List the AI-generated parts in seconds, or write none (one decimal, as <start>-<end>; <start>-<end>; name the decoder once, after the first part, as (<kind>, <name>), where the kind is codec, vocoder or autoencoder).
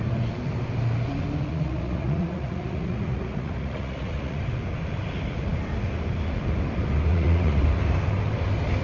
1.5-4.4 (vocoder, Vocos); 7.1-7.6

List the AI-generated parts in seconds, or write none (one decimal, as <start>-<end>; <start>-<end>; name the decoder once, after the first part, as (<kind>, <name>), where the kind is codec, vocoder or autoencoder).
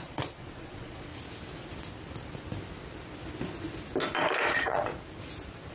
0.0-1.1 (vocoder, Vocos); 4.5-4.9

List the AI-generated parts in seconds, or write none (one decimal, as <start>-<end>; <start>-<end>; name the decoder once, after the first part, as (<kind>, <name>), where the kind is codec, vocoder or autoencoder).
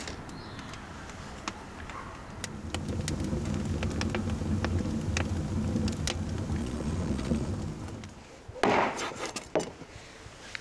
6.6-7.5 (vocoder, Vocos)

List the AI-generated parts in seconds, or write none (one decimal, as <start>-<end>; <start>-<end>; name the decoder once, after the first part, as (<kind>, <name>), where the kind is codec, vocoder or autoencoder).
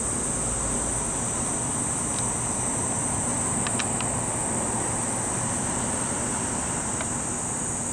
none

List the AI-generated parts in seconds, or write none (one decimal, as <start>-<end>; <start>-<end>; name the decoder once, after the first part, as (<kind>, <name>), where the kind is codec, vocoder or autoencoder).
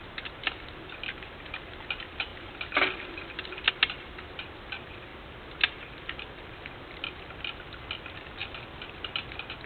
none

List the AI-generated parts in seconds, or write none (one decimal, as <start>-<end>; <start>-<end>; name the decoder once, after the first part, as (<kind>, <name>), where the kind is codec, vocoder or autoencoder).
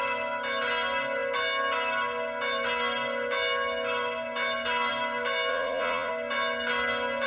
5.5-6.1 (vocoder, Vocos)